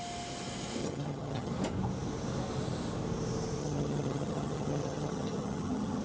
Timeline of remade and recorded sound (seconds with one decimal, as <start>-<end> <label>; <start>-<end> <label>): 0.0-0.8 recorded; 0.8-1.5 remade; 1.5-3.6 recorded; 3.6-6.0 remade